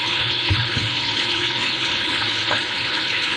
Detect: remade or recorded remade